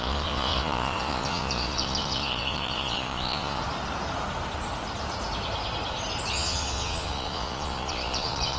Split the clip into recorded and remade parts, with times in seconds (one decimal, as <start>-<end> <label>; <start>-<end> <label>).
0.0-3.6 remade; 3.6-6.3 recorded; 6.3-8.6 remade